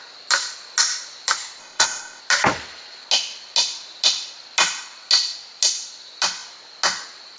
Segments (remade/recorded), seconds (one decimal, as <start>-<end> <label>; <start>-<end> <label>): 0.0-1.6 recorded; 1.6-2.2 remade; 2.2-7.4 recorded